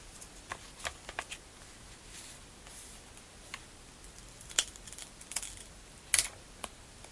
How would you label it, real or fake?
real